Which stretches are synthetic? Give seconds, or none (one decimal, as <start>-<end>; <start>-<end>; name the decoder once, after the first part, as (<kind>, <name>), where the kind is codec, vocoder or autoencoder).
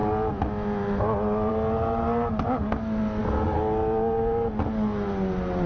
none